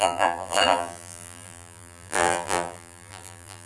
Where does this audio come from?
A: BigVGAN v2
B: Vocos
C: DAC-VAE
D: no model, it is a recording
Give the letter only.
A